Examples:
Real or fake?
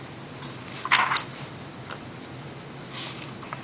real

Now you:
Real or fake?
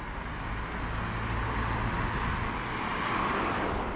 real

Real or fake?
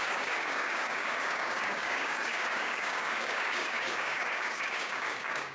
fake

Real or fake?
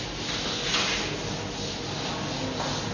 real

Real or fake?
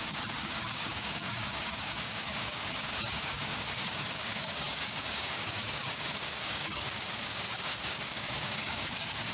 fake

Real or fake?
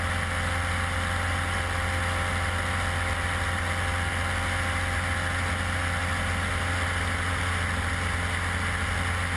real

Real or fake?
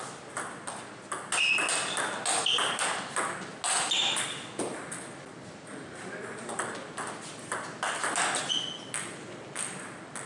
real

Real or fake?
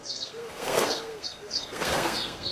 fake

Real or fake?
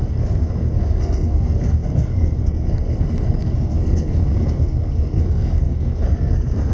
fake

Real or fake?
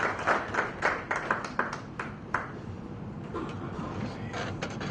fake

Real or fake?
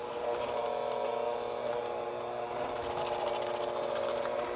real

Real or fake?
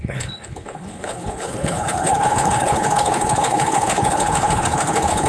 fake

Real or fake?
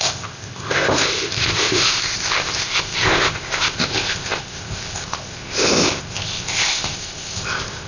fake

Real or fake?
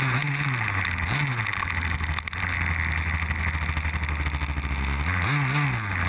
real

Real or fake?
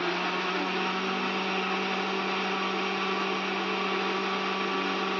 real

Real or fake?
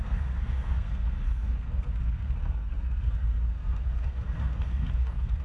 fake